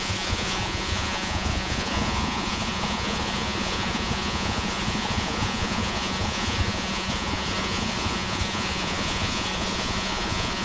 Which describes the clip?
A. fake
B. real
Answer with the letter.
A